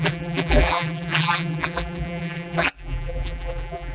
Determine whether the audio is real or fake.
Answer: fake